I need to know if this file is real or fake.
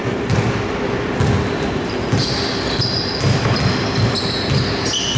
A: real